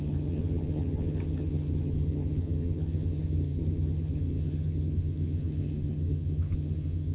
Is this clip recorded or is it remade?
remade